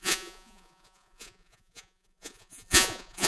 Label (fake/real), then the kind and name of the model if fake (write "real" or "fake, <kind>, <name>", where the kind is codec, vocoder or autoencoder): fake, vocoder, Vocos